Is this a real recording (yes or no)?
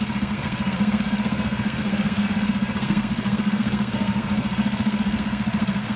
no